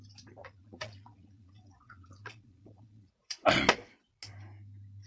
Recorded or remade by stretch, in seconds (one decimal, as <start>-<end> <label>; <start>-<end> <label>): 0.0-0.4 recorded; 0.4-3.5 remade; 3.5-5.1 recorded